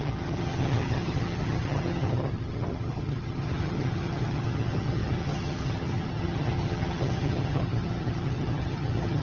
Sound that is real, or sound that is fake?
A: fake